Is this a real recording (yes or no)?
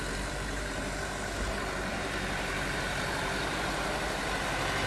no